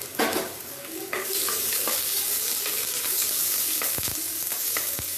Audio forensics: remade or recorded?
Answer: remade